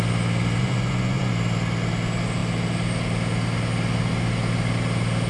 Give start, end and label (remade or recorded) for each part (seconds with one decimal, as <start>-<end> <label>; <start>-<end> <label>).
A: 0.0-0.6 recorded; 0.6-1.3 remade; 1.3-5.3 recorded